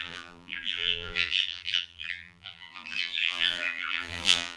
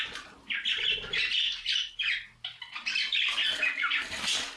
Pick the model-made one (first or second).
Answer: first